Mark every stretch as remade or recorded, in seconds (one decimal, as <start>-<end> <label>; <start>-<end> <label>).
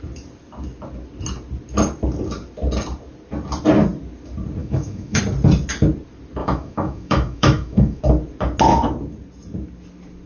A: 0.0-4.6 recorded; 4.6-5.2 remade; 5.2-6.4 recorded; 6.4-8.0 remade; 8.0-10.3 recorded